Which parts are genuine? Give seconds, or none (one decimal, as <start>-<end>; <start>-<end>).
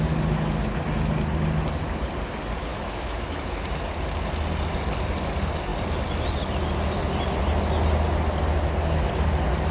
0.0-2.7; 3.5-9.7